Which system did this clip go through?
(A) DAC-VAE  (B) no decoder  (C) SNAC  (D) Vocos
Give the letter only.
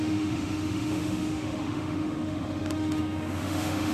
A